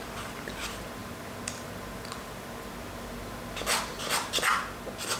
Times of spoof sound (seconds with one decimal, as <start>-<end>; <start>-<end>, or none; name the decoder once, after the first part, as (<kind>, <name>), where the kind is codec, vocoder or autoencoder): 0.0-1.0 (vocoder, BigVGAN v2); 4.1-4.5